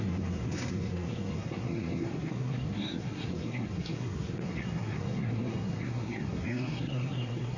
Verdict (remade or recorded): remade